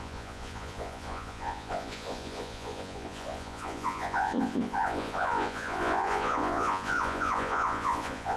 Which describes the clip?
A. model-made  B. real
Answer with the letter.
A